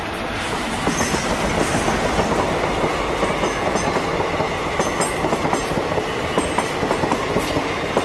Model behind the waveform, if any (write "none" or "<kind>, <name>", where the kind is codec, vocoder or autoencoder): none